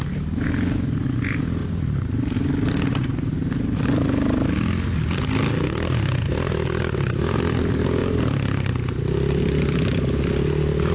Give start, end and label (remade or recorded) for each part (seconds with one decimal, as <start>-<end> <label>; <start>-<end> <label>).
0.0-1.6 recorded; 1.6-3.3 remade; 3.3-10.9 recorded